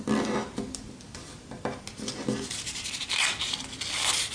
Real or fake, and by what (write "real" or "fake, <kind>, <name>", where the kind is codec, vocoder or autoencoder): real